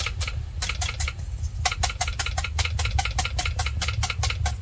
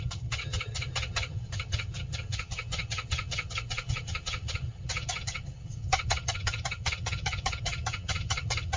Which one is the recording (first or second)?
first